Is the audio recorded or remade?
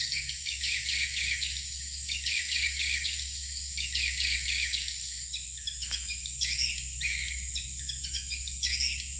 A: remade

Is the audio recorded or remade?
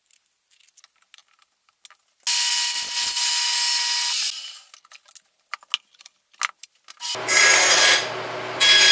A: recorded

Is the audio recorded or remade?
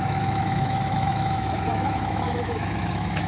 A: remade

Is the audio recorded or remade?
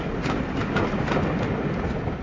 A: recorded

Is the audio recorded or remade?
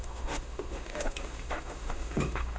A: remade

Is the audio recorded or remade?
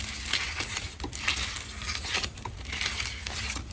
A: recorded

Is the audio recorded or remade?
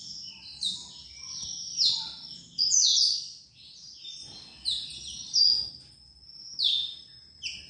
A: recorded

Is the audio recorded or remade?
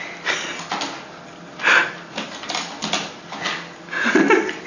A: recorded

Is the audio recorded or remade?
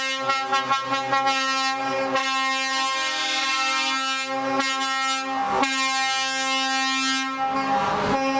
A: recorded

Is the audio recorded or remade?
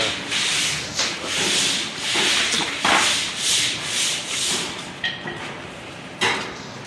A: recorded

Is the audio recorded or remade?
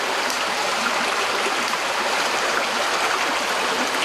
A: recorded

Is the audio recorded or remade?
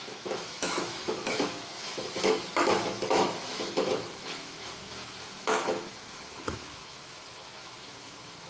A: remade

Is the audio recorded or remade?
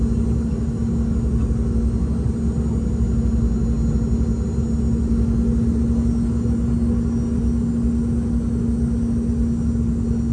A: recorded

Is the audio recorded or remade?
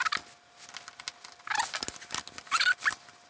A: recorded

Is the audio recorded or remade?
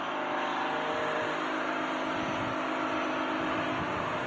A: recorded